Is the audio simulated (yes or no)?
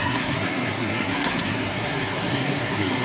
yes